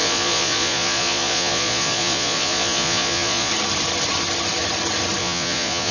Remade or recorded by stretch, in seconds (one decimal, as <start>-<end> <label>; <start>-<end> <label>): 0.0-3.5 remade; 3.5-5.2 recorded; 5.2-5.9 remade